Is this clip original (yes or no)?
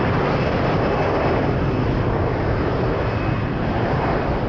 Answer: yes